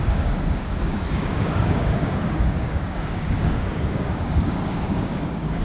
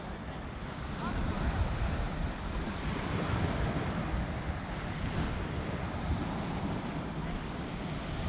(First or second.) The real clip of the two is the second